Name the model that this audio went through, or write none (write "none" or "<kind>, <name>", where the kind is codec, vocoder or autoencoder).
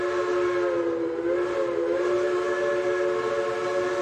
none